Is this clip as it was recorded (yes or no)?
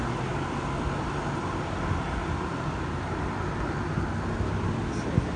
yes